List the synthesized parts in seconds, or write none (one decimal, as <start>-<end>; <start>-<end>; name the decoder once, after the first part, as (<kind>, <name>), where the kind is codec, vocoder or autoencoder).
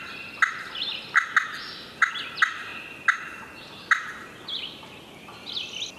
none